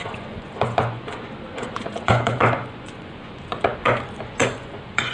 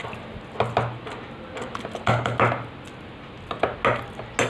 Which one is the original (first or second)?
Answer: second